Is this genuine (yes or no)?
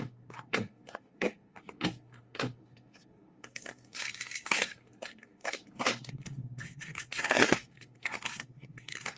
no